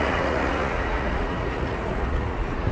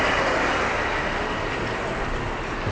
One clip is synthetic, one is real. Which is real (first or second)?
second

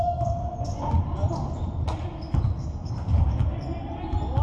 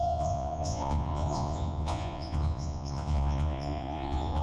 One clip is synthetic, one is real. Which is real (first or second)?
first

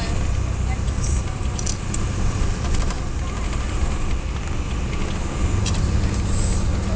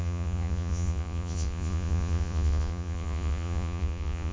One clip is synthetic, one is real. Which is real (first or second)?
first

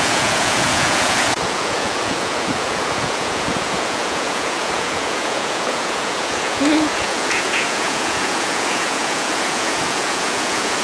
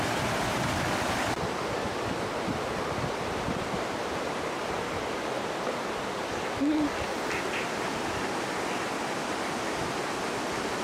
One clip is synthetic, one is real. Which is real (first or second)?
second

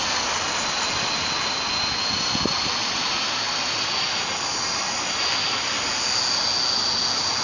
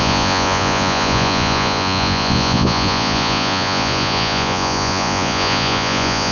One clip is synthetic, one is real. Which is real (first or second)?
first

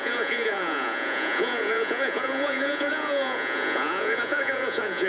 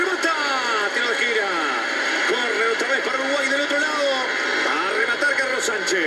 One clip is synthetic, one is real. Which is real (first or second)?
second